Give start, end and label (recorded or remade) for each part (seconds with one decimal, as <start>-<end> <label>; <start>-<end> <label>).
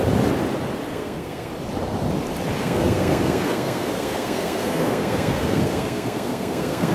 0.0-0.9 recorded; 0.9-1.5 remade; 1.5-2.6 recorded; 2.6-6.9 remade